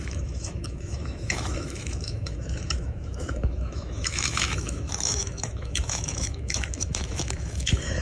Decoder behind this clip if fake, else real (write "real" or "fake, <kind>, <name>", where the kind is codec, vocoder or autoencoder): fake, autoencoder, DAC-VAE